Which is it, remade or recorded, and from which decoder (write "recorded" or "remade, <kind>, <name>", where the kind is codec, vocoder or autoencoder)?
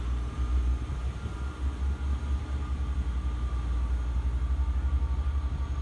recorded